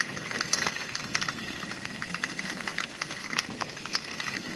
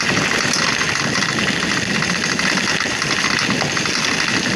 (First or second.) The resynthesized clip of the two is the first